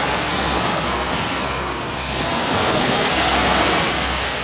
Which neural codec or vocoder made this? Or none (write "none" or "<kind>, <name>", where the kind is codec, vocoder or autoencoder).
codec, SNAC